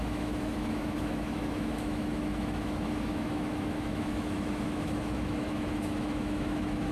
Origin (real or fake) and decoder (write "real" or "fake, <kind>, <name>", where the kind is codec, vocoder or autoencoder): fake, autoencoder, DAC-VAE